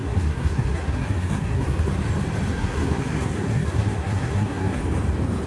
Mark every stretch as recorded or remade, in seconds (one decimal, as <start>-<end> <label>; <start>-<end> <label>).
0.0-1.9 remade; 1.9-2.5 recorded; 2.5-4.8 remade; 4.8-5.5 recorded

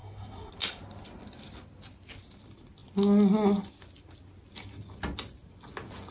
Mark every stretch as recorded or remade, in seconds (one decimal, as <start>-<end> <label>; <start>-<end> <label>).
0.0-0.5 remade; 0.5-6.1 recorded

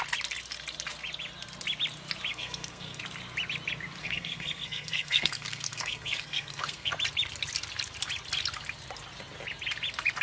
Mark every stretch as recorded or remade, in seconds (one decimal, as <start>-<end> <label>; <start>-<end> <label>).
0.0-2.3 recorded; 2.3-3.0 remade; 3.0-4.0 recorded; 4.0-6.9 remade; 6.9-10.2 recorded

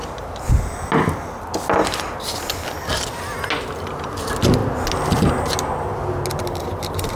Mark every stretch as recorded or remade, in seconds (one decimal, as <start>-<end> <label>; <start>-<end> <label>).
0.0-7.2 recorded

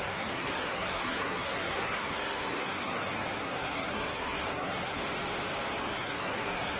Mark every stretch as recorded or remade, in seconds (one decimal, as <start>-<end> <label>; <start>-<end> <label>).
0.0-5.0 remade; 5.0-5.8 recorded; 5.8-6.8 remade